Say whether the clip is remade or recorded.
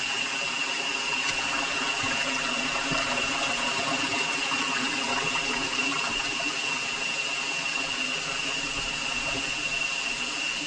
recorded